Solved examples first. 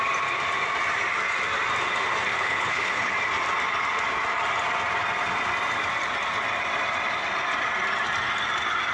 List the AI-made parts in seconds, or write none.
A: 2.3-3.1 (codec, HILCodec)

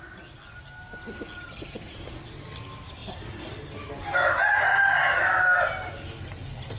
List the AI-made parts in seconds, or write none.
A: none

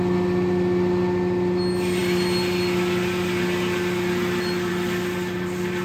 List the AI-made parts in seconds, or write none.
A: none

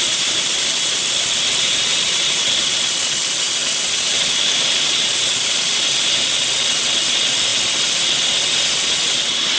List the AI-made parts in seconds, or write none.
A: 1.9-2.7 (vocoder, BigVGAN v2); 4.1-6.3

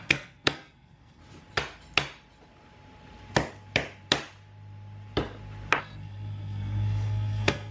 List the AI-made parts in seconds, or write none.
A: 0.0-1.2 (codec, SNAC); 5.8-7.7

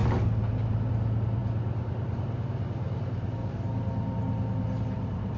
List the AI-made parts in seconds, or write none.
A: none